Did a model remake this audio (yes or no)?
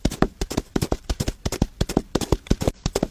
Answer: yes